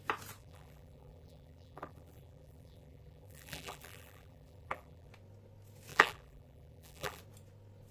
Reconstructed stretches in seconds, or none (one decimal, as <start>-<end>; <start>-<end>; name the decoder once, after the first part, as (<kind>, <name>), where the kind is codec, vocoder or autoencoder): 0.4-5.1 (vocoder, BigVGAN v2); 5.9-7.2